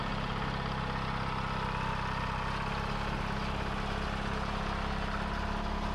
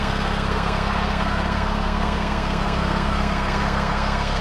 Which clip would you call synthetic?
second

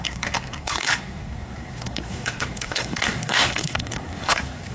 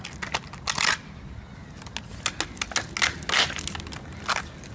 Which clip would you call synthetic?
first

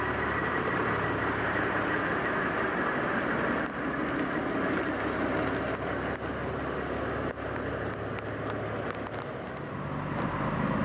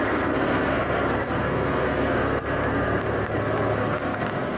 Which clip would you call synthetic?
second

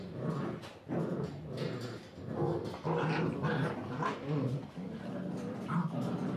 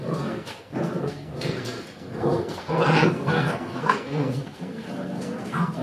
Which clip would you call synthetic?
second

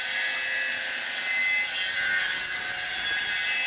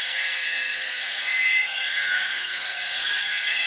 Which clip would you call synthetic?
second